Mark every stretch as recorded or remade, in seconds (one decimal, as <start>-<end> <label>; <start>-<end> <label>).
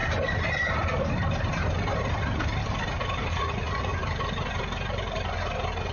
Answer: 0.0-3.3 recorded; 3.3-3.9 remade; 3.9-5.9 recorded